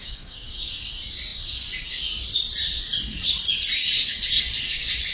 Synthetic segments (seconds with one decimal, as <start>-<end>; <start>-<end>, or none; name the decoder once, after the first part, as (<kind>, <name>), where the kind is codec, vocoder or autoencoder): 0.0-0.7 (codec, DAC)